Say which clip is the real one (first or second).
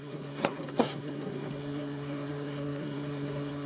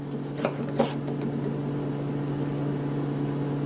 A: second